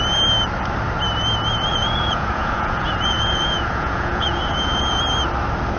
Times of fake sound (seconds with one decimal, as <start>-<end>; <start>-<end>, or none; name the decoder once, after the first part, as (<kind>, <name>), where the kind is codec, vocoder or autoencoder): 1.7-5.0 (vocoder, Vocos)